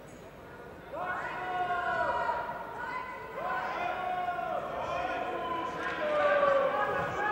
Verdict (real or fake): real